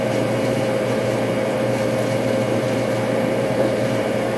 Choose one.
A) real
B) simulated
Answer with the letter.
B